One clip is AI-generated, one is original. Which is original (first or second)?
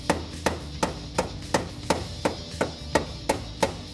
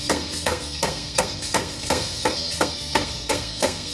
first